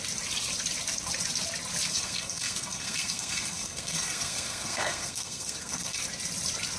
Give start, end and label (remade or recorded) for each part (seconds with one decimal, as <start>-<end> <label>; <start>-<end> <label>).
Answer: 0.0-1.9 recorded; 1.9-6.0 remade; 6.0-6.8 recorded